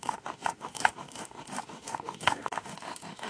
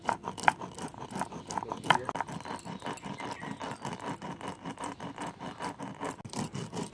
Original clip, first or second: second